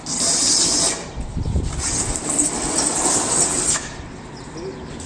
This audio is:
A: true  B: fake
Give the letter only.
A